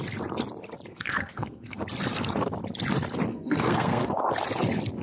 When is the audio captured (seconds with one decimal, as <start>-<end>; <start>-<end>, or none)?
0.0-0.9; 1.8-3.3; 4.1-5.0